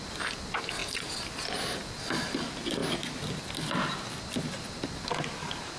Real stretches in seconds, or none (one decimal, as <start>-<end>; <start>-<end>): 0.0-5.8